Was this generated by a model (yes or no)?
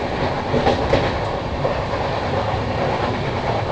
no